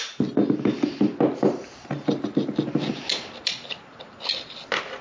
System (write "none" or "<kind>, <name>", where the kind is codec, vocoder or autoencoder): none